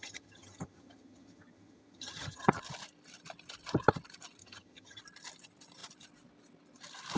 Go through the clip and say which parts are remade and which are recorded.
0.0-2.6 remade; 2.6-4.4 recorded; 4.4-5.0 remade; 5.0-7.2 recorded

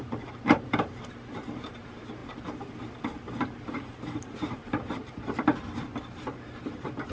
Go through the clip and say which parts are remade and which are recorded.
0.0-2.2 remade; 2.2-3.0 recorded; 3.0-5.5 remade; 5.5-7.1 recorded